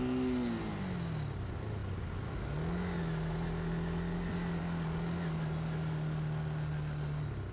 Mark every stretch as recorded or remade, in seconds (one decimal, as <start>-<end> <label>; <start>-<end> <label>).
0.0-7.5 recorded